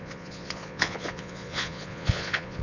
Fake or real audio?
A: fake